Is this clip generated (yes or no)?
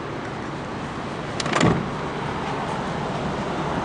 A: no